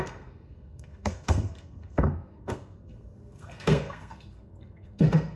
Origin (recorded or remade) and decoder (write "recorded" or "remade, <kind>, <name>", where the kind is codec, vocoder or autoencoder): remade, codec, SNAC